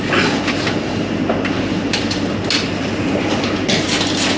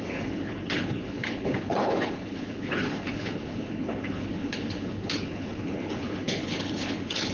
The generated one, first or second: second